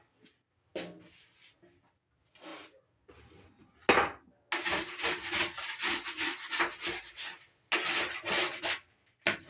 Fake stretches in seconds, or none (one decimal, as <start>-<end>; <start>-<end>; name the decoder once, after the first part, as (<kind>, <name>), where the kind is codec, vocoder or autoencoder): none